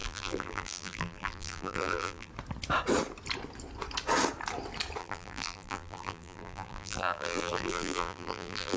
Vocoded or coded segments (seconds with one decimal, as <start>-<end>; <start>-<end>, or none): 0.0-2.3; 5.0-8.8